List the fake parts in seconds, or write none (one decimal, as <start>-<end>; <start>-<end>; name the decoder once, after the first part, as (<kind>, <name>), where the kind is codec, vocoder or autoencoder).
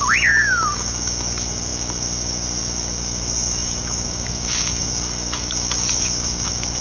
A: 0.0-6.8 (autoencoder, DAC-VAE)